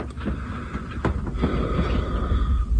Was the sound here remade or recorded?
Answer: recorded